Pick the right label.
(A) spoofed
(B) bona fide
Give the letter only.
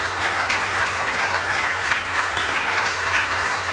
A